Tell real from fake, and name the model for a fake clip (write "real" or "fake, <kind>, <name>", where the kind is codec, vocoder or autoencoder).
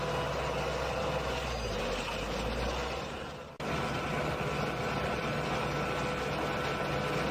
real